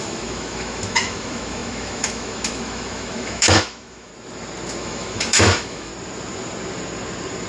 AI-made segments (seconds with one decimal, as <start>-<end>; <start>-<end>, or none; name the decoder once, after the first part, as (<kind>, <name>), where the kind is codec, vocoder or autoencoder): 0.0-4.1 (autoencoder, DAC-VAE); 4.8-5.9